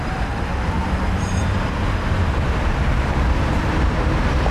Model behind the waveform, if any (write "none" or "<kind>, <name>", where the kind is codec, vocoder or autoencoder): vocoder, BigVGAN v2